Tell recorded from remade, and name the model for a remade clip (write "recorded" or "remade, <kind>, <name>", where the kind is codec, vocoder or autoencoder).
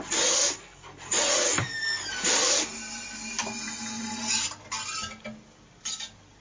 recorded